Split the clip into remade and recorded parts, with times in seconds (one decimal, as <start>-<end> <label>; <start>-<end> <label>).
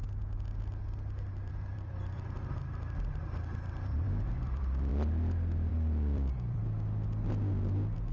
0.0-1.3 recorded; 1.3-4.9 remade; 4.9-5.7 recorded; 5.7-6.6 remade; 6.6-8.1 recorded